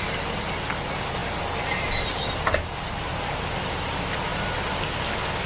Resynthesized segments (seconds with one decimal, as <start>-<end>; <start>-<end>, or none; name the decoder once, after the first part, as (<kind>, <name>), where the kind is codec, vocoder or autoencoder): none